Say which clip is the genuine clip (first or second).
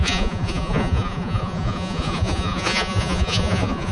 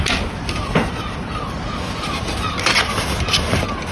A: second